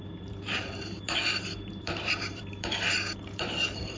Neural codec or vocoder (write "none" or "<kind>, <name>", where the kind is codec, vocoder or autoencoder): vocoder, BigVGAN v2